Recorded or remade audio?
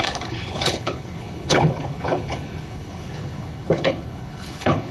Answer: remade